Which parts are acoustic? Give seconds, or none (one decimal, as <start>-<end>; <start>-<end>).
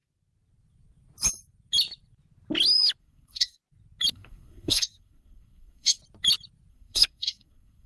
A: 0.0-3.0; 3.6-4.1; 6.0-6.7